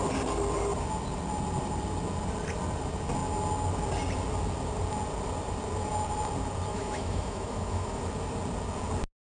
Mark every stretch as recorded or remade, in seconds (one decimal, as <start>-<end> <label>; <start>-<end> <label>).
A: 0.0-6.7 recorded; 6.7-8.0 remade; 8.0-9.3 recorded